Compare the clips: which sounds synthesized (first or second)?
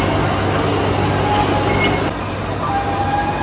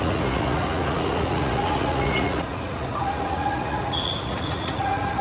second